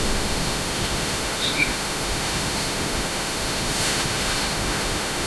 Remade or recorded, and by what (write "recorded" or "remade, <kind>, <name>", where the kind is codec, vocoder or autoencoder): remade, autoencoder, DAC-VAE